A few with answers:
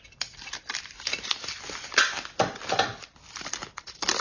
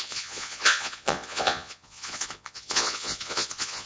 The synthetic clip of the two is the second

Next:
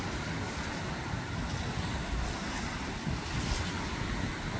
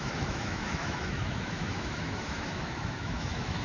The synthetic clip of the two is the second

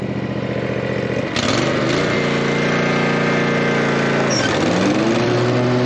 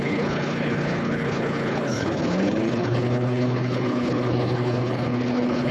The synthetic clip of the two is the second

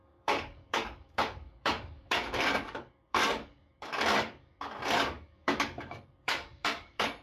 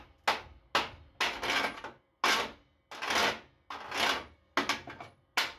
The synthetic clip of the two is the first